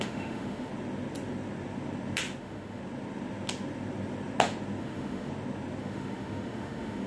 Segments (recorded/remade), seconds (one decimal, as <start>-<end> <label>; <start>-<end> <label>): 0.0-0.7 remade; 0.7-2.4 recorded; 2.4-2.8 remade; 2.8-4.8 recorded; 4.8-5.3 remade; 5.3-5.8 recorded; 5.8-7.1 remade